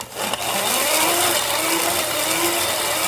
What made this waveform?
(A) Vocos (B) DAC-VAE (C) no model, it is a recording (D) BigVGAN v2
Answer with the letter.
C